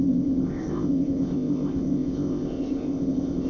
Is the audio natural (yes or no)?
no